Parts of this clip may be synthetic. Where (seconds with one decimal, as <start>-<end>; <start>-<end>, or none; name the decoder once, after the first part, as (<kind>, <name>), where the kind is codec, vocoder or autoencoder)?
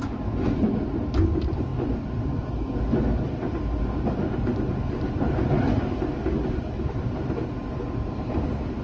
none